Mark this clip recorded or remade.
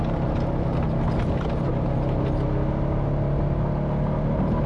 recorded